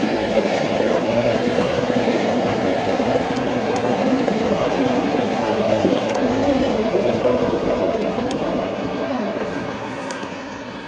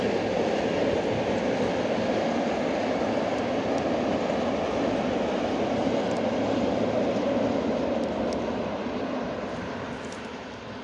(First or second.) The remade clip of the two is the first